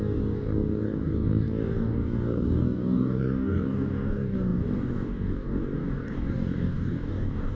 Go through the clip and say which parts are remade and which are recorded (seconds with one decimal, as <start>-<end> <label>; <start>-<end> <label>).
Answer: 0.0-7.6 remade